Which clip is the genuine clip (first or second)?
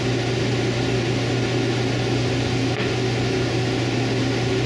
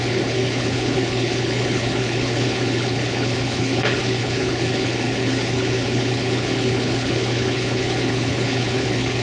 first